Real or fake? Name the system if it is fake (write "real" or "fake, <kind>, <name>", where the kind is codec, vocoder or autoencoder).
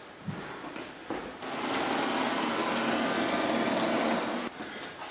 real